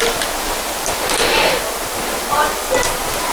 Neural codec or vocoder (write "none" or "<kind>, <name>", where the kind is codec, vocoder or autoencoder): none